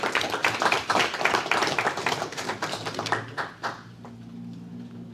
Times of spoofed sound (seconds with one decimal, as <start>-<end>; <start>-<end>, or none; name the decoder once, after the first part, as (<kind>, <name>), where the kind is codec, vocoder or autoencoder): 0.4-3.5 (vocoder, BigVGAN v2)